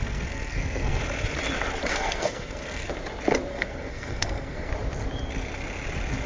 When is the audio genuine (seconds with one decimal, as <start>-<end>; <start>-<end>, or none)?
1.0-1.9; 2.9-3.5; 4.7-6.3